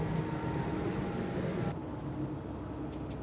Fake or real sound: real